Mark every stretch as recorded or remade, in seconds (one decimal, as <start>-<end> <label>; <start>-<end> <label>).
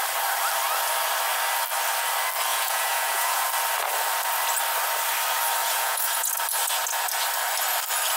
0.0-2.5 recorded; 2.5-3.4 remade; 3.4-5.6 recorded; 5.6-6.3 remade; 6.3-8.2 recorded